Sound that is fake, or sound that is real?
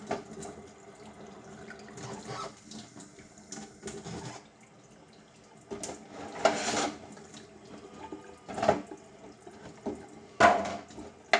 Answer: real